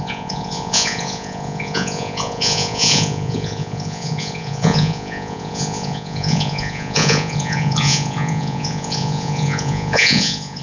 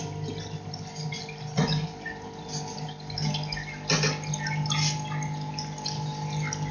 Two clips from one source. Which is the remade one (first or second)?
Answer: first